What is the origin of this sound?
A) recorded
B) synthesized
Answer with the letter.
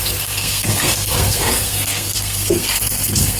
B